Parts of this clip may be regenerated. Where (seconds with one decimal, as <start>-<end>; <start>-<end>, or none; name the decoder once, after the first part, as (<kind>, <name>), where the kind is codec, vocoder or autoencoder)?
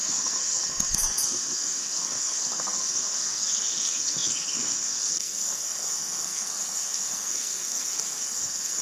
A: 0.0-8.8 (codec, SNAC)